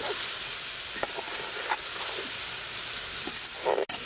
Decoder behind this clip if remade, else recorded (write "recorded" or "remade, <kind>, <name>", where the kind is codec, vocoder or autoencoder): recorded